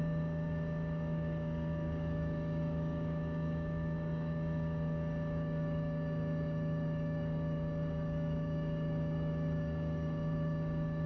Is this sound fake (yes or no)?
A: yes